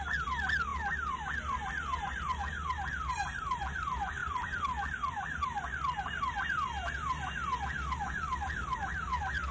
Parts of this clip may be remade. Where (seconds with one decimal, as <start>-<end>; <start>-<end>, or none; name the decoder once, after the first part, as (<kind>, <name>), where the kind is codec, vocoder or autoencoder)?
4.2-6.2 (vocoder, BigVGAN v2)